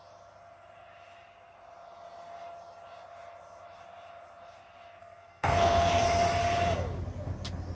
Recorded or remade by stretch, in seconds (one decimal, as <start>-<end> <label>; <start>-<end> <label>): 0.0-5.0 recorded; 5.0-5.9 remade; 5.9-7.7 recorded